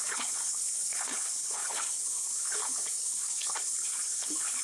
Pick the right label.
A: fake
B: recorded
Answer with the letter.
A